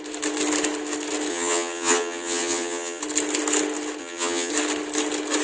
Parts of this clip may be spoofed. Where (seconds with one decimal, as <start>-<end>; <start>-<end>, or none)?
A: 1.3-3.0; 4.0-4.5